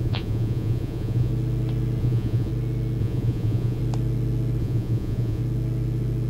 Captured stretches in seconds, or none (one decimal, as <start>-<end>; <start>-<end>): 1.3-2.0; 2.5-3.0; 3.8-4.6; 5.4-6.3